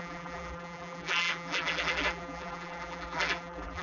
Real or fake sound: fake